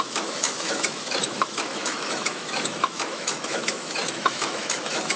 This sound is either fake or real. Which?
fake